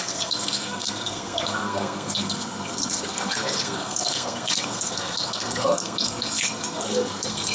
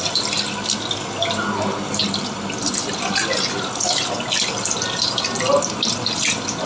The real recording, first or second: second